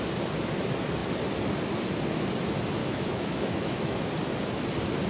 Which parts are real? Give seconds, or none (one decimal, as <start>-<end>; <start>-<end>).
0.0-2.8; 4.0-5.1